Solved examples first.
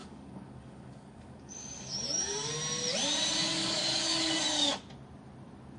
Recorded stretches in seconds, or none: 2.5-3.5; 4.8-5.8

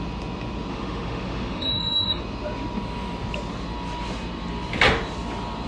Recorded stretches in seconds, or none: 0.0-0.7; 2.2-5.7

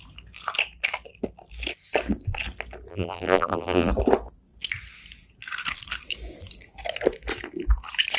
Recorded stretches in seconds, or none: 0.0-2.9; 3.9-8.2

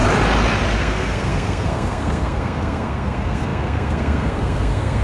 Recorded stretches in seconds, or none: 0.0-0.8

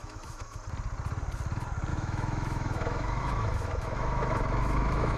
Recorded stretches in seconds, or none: 0.6-1.9

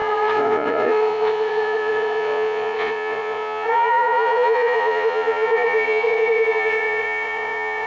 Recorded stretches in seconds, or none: none